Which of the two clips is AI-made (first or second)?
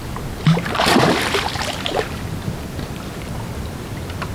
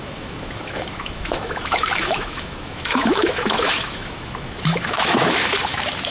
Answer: second